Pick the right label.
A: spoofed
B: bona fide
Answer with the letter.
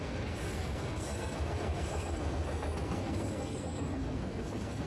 A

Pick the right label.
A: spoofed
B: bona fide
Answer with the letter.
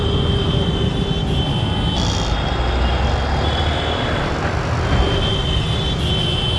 B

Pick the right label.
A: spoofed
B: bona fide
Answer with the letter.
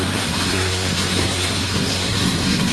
A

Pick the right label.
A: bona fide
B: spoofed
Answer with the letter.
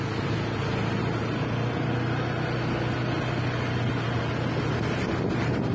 A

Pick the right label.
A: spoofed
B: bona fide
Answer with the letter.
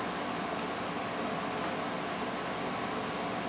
B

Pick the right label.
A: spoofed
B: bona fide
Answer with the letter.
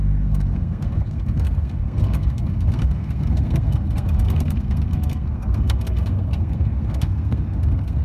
A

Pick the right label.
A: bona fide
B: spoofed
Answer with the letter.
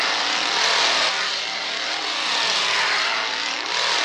A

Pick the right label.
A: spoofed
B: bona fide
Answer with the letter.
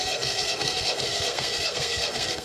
A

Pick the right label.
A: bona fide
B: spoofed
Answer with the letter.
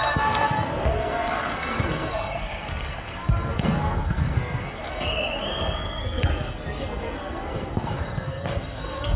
B